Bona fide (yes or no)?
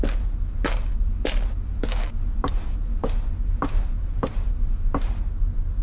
yes